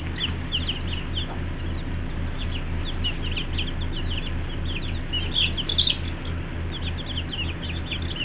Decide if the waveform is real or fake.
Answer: real